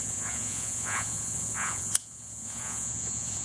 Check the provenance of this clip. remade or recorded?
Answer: remade